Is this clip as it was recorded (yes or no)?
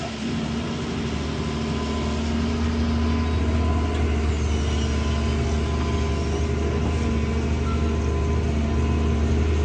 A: yes